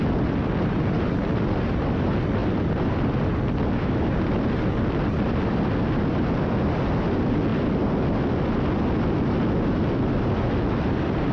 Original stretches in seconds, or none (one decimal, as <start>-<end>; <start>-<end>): 0.0-11.3